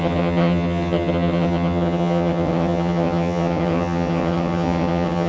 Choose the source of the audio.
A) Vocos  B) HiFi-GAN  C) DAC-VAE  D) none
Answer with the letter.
B